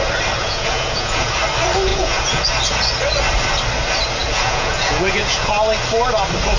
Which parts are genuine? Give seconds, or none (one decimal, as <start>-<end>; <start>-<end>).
0.0-0.4; 1.3-1.9; 2.4-4.2; 5.5-6.6